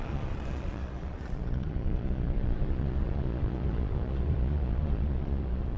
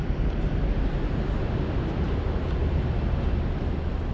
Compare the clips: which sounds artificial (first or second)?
first